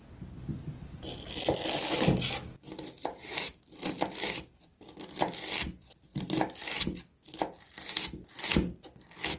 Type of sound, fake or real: real